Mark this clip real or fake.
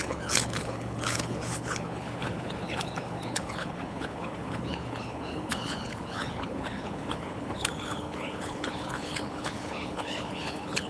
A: fake